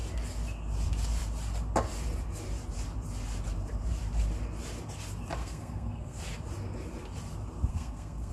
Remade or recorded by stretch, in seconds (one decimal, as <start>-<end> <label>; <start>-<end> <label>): 0.0-5.4 recorded; 5.4-6.2 remade; 6.2-7.7 recorded; 7.7-8.3 remade